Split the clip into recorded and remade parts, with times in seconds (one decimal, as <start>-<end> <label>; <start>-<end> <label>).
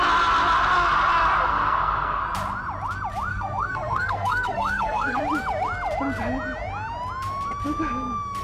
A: 0.0-1.5 recorded; 1.5-2.2 remade; 2.2-3.3 recorded; 3.3-5.2 remade; 5.2-8.4 recorded